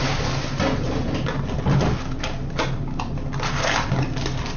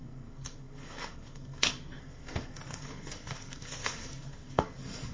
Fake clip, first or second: second